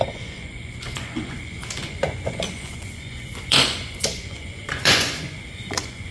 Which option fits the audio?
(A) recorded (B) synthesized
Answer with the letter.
B